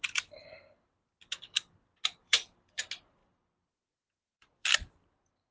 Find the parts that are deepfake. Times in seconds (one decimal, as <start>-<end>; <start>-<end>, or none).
0.0-1.0; 2.2-2.8; 3.2-5.5